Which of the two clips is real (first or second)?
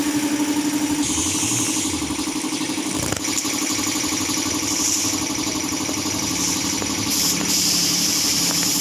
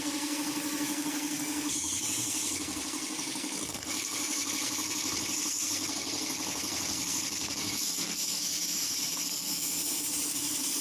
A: first